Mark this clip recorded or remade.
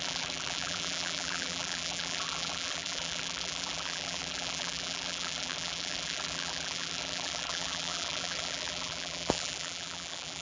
remade